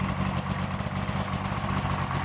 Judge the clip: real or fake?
real